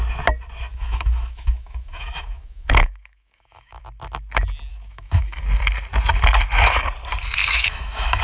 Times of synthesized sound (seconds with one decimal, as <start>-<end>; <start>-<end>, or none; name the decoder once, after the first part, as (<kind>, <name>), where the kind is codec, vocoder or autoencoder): 0.7-3.8 (autoencoder, DAC-VAE); 4.7-5.4; 7.4-8.2